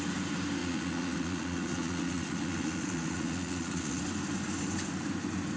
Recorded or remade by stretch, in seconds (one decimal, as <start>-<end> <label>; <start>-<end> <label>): 0.0-0.6 recorded; 0.6-4.0 remade; 4.0-5.6 recorded